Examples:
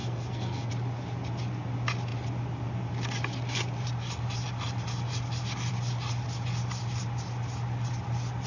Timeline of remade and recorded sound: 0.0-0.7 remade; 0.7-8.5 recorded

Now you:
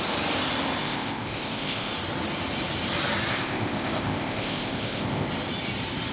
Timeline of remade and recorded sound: 0.0-0.8 recorded; 0.8-1.9 remade; 1.9-3.3 recorded; 3.3-5.3 remade; 5.3-6.1 recorded

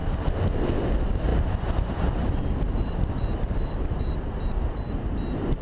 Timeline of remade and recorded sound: 0.0-0.8 remade; 0.8-1.3 recorded; 1.3-4.5 remade; 4.5-5.6 recorded

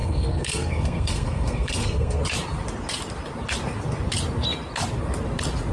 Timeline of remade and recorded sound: 0.0-2.2 remade; 2.2-5.7 recorded

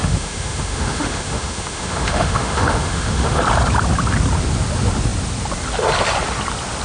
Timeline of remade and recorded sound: 0.0-3.4 remade; 3.4-6.8 recorded

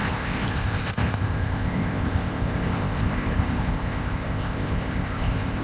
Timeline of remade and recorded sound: 0.0-5.6 remade